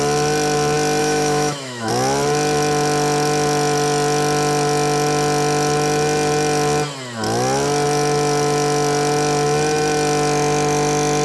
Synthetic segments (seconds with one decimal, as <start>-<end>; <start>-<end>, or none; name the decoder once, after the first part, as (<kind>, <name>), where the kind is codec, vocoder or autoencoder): 1.0-1.9 (autoencoder, DAC-VAE)